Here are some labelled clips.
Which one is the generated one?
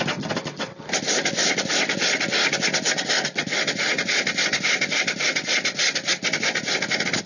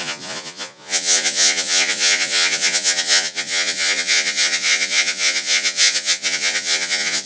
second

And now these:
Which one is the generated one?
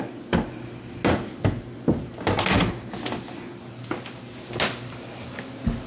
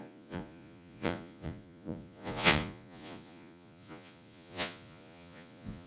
second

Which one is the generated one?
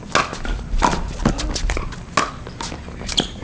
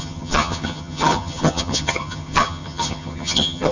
second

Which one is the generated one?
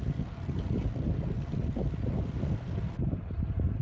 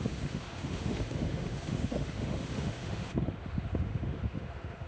second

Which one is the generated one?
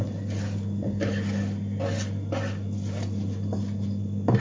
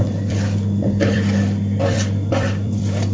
second